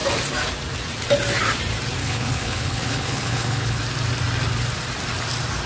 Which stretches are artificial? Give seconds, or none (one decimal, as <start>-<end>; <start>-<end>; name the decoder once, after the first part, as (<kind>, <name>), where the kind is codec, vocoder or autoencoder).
2.0-3.8 (codec, HILCodec)